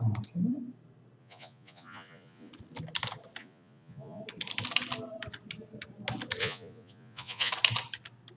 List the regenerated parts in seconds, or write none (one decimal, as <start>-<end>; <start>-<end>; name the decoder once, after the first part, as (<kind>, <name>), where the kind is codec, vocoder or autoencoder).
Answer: 1.2-2.5 (vocoder, Vocos); 3.4-4.2; 6.4-7.5